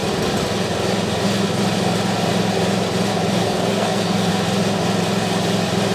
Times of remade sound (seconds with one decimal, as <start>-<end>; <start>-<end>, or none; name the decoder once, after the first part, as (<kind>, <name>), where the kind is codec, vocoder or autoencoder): 3.4-4.3 (codec, SNAC)

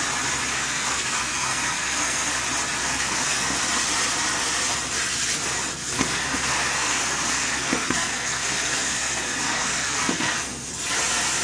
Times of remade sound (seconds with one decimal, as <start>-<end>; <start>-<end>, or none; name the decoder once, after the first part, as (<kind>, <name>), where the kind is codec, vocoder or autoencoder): 0.5-2.4 (codec, SNAC); 2.8-3.6; 5.7-10.7

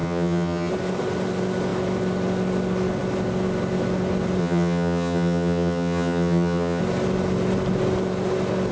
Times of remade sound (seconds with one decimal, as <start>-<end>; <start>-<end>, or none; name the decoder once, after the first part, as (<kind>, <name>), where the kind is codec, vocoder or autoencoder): 0.0-0.7 (vocoder, HiFi-GAN); 4.4-6.8